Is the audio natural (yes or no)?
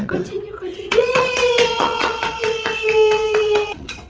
no